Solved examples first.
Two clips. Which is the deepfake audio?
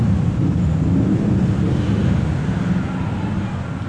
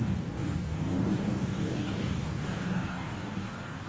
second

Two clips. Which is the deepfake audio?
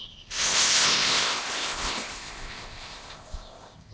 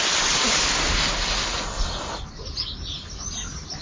first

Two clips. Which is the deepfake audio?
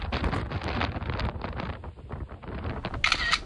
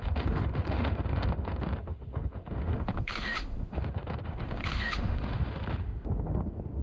second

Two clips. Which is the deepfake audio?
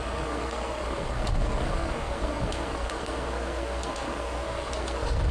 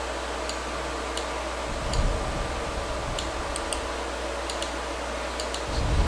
first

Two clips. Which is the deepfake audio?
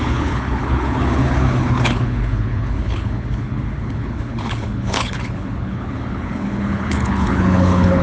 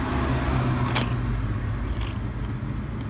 first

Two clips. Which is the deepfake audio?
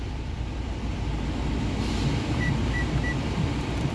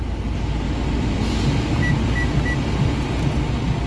first